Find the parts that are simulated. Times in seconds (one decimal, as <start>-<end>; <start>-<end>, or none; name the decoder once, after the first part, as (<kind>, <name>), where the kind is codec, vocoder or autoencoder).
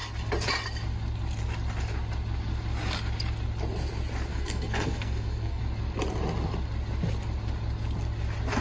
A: 4.3-5.6 (codec, SNAC)